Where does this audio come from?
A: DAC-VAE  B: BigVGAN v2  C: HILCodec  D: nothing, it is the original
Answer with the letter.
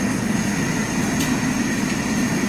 D